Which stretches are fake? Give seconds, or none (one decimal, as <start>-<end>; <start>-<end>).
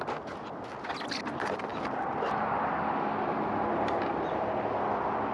none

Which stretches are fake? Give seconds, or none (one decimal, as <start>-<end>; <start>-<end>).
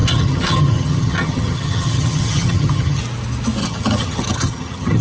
0.0-3.0; 3.6-5.0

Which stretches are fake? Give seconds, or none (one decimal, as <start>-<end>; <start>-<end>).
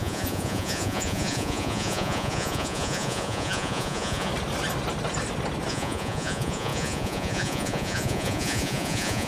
0.0-4.3; 5.7-9.3